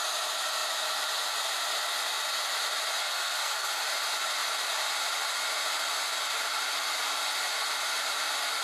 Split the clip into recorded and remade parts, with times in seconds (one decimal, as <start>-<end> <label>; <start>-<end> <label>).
0.0-3.0 recorded; 3.0-3.8 remade; 3.8-8.6 recorded